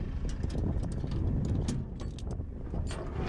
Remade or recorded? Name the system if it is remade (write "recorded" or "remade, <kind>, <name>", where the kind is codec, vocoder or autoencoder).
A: recorded